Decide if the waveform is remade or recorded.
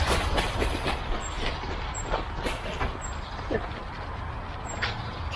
recorded